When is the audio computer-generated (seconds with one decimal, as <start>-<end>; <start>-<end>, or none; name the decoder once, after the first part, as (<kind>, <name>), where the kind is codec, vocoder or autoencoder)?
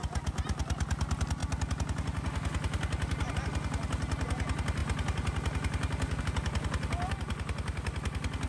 none